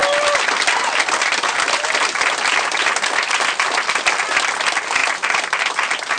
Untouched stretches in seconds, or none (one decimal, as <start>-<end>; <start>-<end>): 0.0-6.2

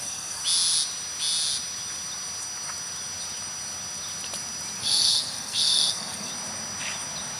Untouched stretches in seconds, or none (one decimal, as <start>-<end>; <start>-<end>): 0.4-4.8; 6.3-7.4

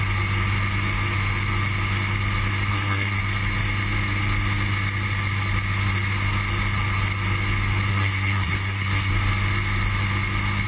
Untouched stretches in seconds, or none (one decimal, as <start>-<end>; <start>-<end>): 0.0-2.7; 3.2-7.9; 9.1-10.7

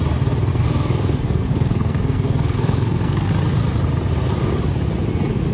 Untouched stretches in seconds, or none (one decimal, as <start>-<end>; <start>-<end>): 0.0-0.5; 3.3-5.5

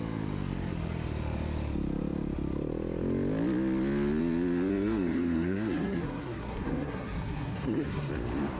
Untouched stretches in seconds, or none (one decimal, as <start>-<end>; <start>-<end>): 0.0-4.7; 8.1-8.6

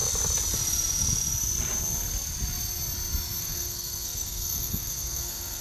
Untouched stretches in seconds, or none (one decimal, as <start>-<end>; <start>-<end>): 0.0-3.4

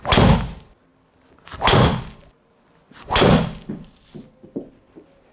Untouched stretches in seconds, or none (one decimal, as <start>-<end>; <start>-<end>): 0.0-5.3

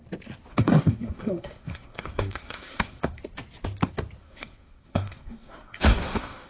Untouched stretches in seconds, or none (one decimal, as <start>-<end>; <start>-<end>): 0.0-0.5; 3.2-4.2